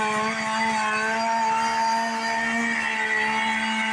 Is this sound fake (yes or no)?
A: no